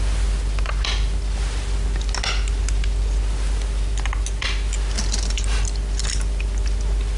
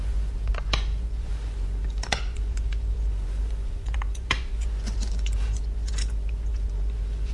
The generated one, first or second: second